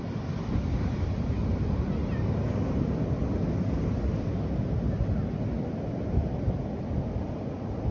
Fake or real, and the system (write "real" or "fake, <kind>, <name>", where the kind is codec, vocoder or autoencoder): real